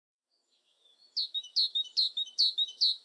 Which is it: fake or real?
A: fake